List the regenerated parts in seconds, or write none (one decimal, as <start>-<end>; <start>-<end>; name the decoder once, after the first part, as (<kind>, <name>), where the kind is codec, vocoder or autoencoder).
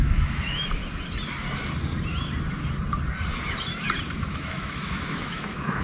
0.0-0.8 (autoencoder, DAC-VAE); 4.3-5.8